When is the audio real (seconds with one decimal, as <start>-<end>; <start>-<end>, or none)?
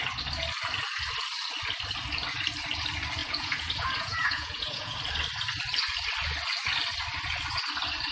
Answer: 0.0-3.2; 5.0-8.1